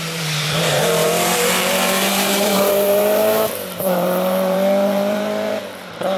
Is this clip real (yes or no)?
no